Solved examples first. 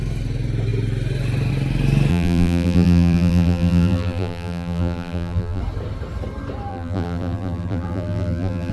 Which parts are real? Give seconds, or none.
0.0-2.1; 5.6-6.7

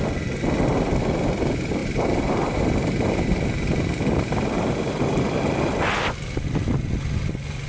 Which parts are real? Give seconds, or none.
0.0-1.8; 5.8-7.7

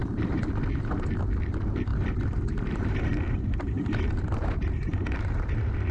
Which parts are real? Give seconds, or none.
0.5-1.9; 5.4-5.9

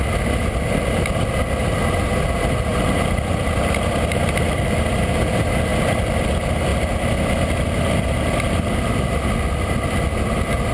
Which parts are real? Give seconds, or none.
0.0-2.7; 4.8-10.7